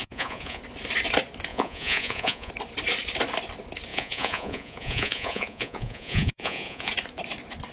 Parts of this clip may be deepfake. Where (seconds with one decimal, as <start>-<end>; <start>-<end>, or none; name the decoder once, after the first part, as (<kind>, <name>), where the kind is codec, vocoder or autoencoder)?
0.0-0.6 (vocoder, Vocos); 1.5-2.5; 3.9-6.9